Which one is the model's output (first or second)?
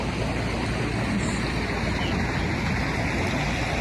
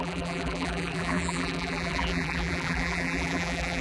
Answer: second